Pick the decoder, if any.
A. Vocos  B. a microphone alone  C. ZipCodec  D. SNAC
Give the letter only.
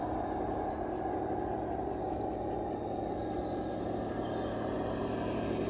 B